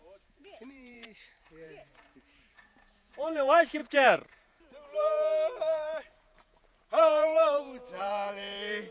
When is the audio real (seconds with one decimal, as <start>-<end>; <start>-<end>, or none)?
none